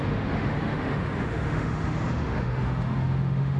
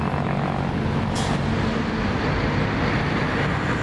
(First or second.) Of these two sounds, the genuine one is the second